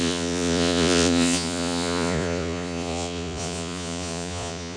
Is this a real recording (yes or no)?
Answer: no